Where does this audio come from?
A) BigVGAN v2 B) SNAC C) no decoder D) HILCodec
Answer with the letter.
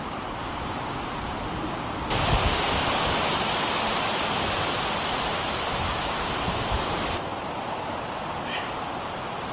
C